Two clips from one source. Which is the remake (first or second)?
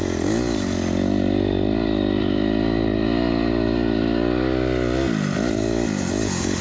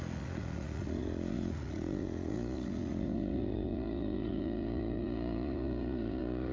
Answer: second